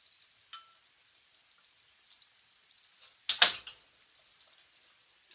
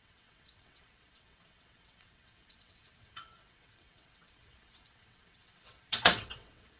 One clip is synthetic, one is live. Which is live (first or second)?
first